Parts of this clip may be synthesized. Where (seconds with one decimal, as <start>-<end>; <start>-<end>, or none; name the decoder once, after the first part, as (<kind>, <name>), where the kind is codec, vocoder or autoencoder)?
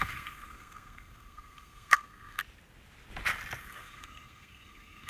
0.0-2.4 (codec, SNAC); 3.6-5.1